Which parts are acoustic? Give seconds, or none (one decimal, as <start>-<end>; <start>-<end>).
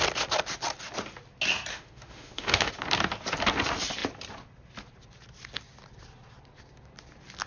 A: 0.0-1.7; 2.7-7.5